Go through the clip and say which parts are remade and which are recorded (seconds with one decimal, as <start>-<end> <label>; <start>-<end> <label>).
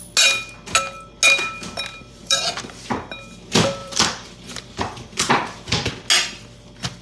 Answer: 0.0-1.9 recorded; 1.9-2.4 remade; 2.4-3.8 recorded; 3.8-5.9 remade; 5.9-7.0 recorded